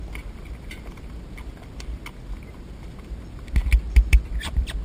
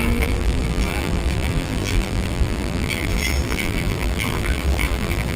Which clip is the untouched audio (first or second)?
first